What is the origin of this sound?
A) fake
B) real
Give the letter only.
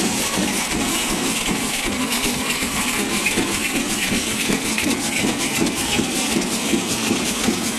A